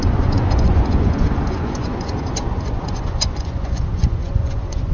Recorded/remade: remade